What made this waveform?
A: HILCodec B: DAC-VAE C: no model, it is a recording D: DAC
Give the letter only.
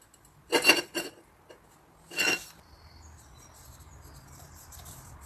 C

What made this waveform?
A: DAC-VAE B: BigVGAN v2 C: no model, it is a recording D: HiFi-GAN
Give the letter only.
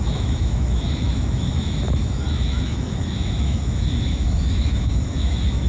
A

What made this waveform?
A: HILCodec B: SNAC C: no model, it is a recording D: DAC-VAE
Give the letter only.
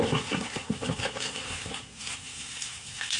B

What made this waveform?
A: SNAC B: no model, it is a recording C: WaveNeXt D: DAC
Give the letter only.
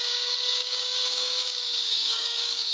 D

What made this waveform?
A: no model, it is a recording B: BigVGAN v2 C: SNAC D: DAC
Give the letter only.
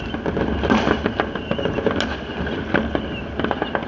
A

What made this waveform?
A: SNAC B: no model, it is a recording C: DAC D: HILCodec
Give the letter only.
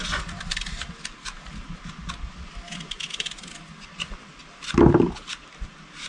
B